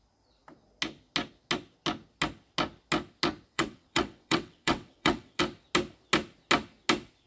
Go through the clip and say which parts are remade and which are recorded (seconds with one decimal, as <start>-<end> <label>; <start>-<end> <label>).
0.0-3.5 recorded; 3.5-5.4 remade; 5.4-7.3 recorded